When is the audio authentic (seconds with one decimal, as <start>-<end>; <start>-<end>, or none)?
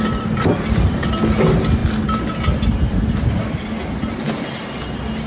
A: 0.0-5.3